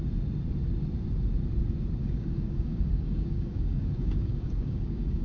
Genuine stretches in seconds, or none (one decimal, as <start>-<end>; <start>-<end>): 0.0-2.0